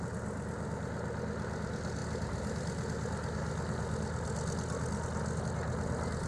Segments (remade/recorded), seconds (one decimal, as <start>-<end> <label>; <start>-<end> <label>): 0.0-6.3 recorded